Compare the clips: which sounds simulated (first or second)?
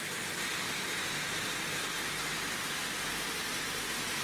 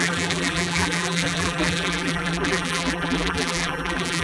second